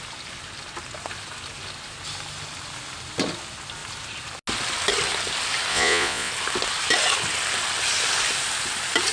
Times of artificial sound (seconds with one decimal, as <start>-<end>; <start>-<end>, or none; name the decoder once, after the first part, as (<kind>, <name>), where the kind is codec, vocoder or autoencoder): 5.7-6.3 (vocoder, Vocos)